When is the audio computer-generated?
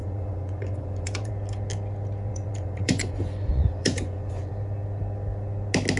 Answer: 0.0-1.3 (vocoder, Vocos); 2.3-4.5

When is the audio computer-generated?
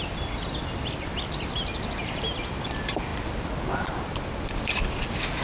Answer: none